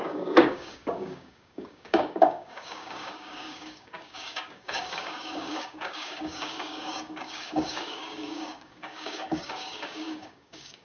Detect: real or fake fake